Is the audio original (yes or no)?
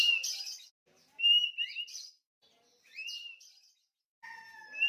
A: yes